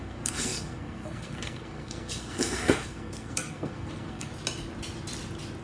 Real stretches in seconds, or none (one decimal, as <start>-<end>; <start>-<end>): 4.3-5.6